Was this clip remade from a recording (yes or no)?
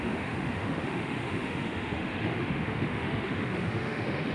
yes